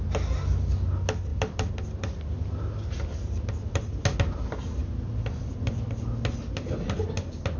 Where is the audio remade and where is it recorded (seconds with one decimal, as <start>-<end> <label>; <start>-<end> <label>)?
0.0-1.3 recorded; 1.3-4.0 remade; 4.0-4.8 recorded; 4.8-5.9 remade; 5.9-7.6 recorded